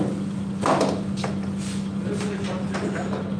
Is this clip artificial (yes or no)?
no